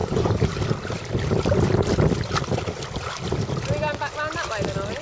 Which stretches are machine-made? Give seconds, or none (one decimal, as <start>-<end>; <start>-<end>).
0.0-0.6